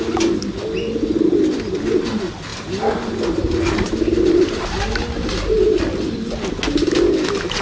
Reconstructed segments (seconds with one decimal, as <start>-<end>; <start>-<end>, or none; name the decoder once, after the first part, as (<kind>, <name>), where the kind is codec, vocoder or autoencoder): none